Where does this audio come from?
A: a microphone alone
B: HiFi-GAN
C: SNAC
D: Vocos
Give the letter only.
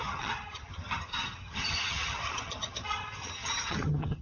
B